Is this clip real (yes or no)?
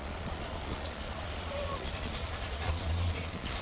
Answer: no